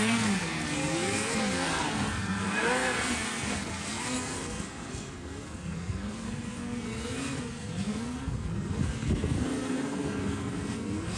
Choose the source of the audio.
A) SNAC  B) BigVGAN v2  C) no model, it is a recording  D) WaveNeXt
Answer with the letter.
A